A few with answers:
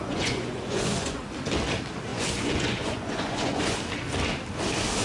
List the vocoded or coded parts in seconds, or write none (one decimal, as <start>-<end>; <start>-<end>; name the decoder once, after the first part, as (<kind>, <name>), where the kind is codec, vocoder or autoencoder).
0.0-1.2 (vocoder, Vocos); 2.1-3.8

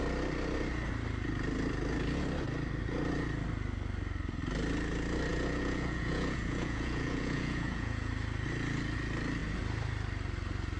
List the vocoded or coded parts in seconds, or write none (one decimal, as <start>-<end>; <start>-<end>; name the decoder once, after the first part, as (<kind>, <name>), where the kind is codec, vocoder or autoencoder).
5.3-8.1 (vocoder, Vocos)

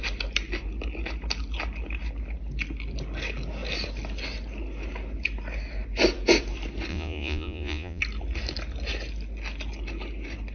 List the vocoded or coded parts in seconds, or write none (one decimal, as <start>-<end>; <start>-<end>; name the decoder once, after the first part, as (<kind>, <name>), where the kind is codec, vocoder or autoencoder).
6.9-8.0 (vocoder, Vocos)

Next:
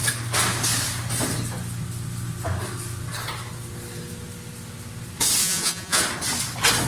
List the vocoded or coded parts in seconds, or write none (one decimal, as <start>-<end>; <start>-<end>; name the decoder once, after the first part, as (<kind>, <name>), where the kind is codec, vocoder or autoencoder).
5.4-6.0 (vocoder, Vocos)

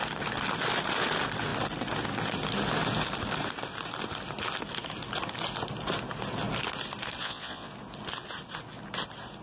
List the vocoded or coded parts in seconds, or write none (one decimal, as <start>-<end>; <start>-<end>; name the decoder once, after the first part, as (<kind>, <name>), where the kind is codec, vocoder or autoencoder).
7.2-7.7 (vocoder, Vocos)